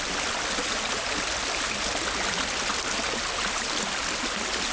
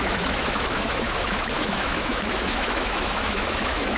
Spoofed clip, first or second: second